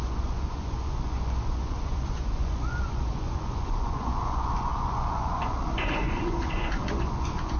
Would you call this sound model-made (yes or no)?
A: yes